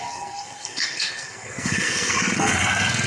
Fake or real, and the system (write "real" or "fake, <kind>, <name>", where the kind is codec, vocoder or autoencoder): fake, codec, SNAC